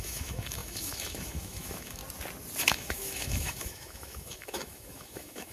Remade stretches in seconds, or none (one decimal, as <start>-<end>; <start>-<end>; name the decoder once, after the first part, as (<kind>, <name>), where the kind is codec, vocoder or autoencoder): 0.0-2.0 (autoencoder, DAC-VAE); 2.6-5.5